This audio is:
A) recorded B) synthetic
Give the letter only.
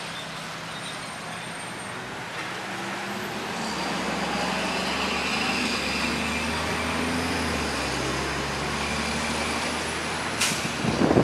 A